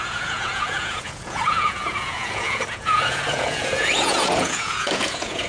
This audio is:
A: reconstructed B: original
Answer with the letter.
A